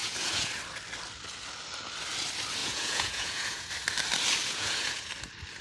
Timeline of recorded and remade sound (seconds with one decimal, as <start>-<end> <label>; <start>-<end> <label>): 0.0-0.5 remade; 0.5-2.6 recorded; 2.6-3.7 remade; 3.7-4.4 recorded; 4.4-5.1 remade; 5.1-5.6 recorded